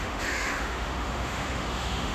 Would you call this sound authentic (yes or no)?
no